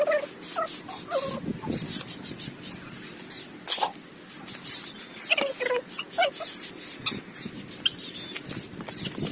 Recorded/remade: recorded